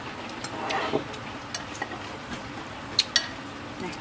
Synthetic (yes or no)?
no